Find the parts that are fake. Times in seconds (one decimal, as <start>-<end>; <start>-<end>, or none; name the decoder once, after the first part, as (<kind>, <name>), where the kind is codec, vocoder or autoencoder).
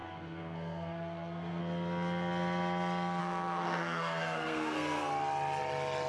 0.0-1.6 (codec, SNAC); 3.2-5.1